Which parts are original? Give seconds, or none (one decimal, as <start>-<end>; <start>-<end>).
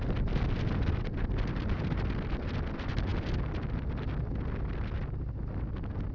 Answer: 0.0-6.1